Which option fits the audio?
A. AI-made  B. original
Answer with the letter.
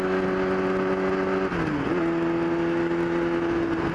B